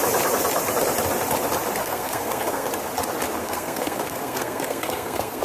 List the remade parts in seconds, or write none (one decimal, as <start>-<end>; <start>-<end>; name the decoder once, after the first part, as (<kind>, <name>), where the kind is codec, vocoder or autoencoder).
1.8-2.7 (codec, SNAC); 3.4-5.4